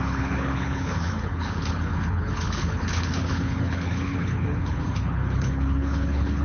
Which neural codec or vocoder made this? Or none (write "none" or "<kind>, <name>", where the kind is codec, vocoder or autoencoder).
codec, HILCodec